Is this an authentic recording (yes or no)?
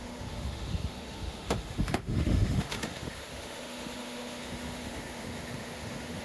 no